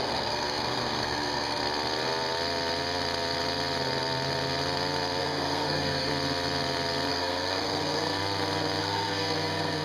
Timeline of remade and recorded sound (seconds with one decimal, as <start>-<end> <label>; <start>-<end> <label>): 0.0-1.6 remade; 1.6-5.2 recorded; 5.2-6.1 remade; 6.1-7.1 recorded; 7.1-8.2 remade; 8.2-8.8 recorded; 8.8-9.8 remade